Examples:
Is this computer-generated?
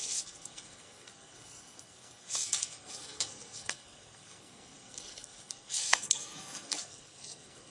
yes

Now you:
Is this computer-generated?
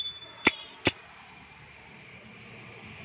no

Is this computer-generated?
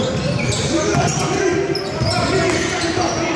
no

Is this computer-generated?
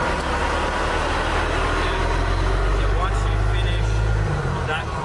no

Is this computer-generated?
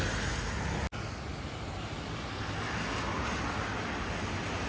no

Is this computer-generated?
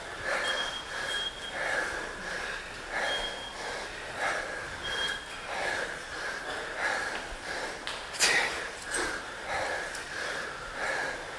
no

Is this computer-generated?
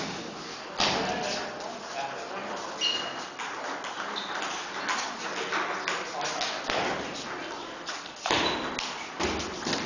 no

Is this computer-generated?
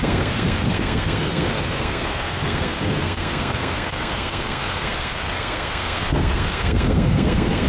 yes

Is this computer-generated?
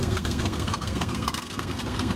yes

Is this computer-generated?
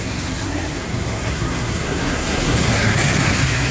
yes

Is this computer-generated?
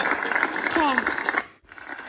no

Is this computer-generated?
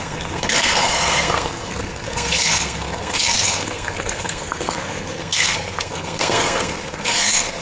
yes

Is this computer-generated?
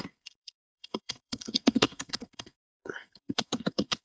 yes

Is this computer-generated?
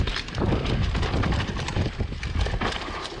no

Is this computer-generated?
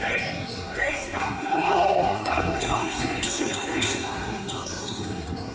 yes